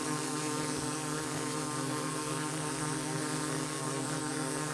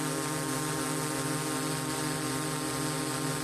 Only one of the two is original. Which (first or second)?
second